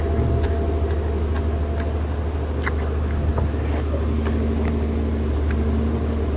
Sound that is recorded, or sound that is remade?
remade